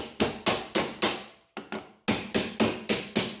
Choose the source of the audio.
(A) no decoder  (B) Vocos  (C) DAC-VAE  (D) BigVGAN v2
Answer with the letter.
A